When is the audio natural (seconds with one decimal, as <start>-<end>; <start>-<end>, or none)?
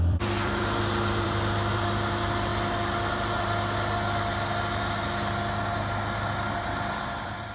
2.5-7.0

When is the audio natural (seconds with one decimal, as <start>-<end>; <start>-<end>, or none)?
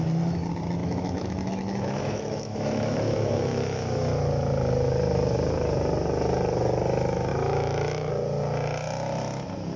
0.0-0.8; 4.0-7.3; 8.1-9.8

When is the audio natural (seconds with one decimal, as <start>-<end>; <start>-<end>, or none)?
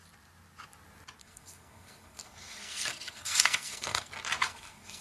0.0-1.2; 4.1-4.5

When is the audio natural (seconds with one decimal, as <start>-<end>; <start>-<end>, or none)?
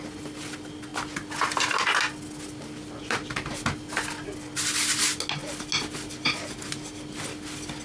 0.0-7.8